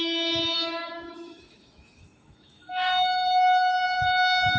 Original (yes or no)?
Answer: no